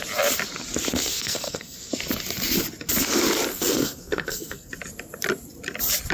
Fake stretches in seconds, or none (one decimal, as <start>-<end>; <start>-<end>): 0.9-1.9; 3.5-4.7